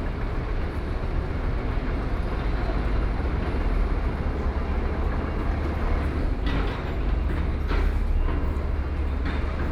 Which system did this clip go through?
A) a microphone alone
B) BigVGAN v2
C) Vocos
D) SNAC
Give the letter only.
A